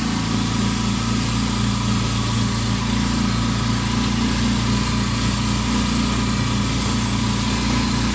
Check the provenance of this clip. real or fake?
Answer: real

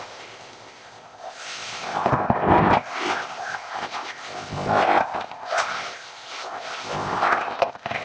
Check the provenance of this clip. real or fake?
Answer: fake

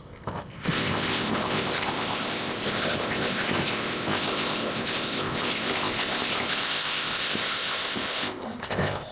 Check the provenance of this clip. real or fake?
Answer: fake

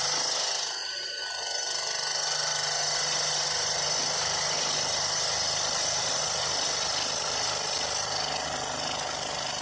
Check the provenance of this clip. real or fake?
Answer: real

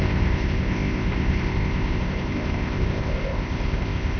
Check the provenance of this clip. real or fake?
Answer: fake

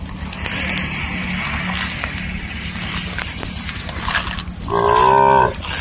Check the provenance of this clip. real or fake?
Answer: real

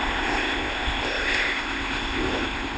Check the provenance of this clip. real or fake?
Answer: fake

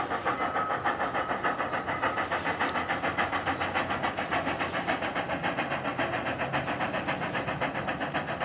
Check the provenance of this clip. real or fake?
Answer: real